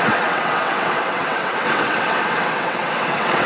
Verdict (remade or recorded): remade